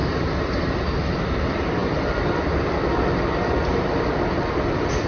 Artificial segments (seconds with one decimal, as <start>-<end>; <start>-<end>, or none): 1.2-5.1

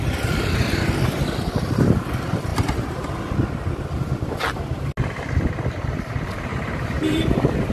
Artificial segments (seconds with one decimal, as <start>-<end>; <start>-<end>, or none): 2.5-3.1; 6.5-7.3

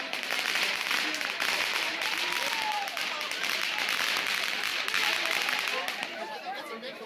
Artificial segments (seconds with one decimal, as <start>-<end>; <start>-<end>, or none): 0.0-4.7; 6.2-7.1

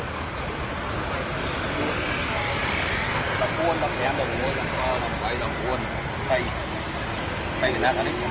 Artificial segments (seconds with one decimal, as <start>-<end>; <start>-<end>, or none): 2.6-3.1

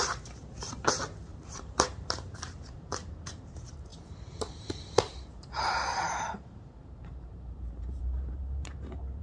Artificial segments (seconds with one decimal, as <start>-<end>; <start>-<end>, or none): 0.0-9.2

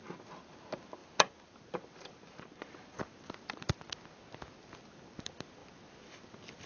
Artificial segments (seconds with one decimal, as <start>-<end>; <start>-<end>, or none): none